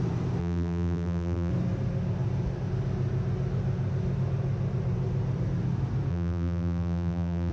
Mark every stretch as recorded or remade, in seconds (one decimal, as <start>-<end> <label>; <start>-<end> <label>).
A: 0.0-0.4 recorded; 0.4-1.5 remade; 1.5-6.1 recorded; 6.1-7.5 remade